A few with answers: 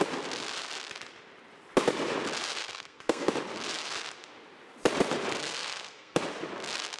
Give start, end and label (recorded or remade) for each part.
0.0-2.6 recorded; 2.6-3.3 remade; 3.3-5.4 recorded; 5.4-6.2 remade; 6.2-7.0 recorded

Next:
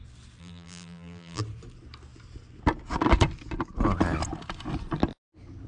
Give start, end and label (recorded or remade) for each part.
0.0-0.4 recorded; 0.4-1.4 remade; 1.4-5.7 recorded

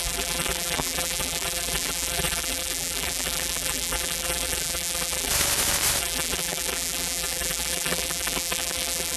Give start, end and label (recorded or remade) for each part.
0.0-5.3 remade; 5.3-6.0 recorded; 6.0-9.2 remade

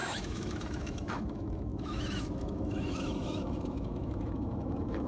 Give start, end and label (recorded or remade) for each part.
0.0-5.1 remade